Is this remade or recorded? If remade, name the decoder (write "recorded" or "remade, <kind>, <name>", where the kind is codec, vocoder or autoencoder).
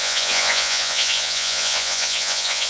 remade, vocoder, Vocos